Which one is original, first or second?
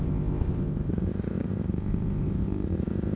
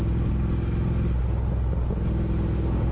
second